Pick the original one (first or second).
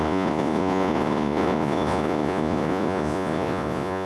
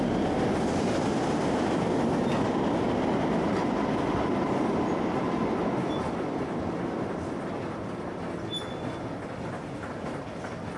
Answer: second